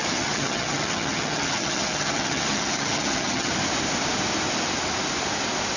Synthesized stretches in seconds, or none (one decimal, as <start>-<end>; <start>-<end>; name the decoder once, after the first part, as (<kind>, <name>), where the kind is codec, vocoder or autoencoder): 0.0-3.5 (vocoder, HiFi-GAN)